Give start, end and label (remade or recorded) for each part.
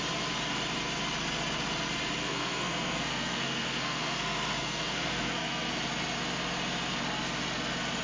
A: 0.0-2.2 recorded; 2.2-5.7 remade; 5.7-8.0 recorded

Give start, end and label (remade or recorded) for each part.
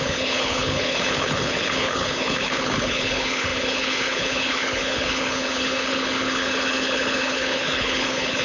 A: 0.0-8.4 remade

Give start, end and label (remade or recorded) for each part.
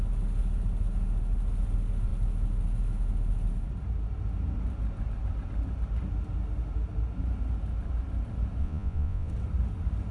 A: 0.0-8.6 recorded; 8.6-9.3 remade; 9.3-10.1 recorded